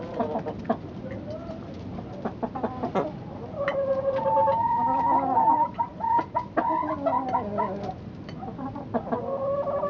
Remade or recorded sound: recorded